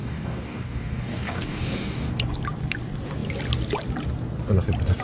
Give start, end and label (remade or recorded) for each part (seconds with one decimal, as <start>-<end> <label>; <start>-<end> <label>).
0.0-2.1 remade; 2.1-5.0 recorded